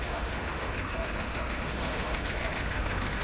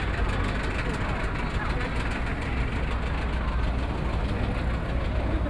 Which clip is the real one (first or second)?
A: second